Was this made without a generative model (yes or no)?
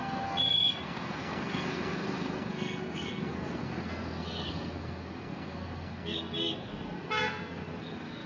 no